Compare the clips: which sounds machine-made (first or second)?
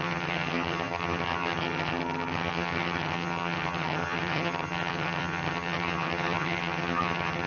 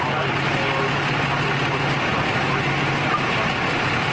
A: first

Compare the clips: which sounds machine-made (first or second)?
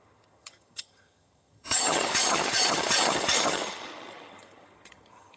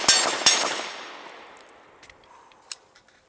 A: first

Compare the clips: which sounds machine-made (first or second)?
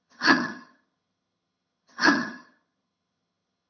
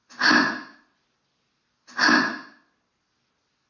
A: first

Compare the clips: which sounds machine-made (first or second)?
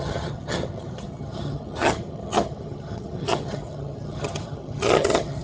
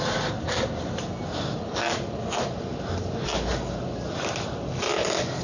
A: first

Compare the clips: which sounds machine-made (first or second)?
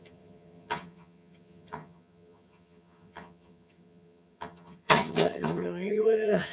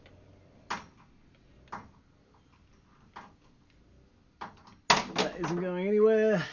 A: first